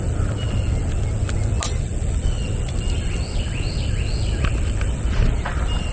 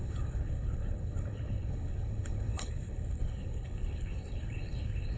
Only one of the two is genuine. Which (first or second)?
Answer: first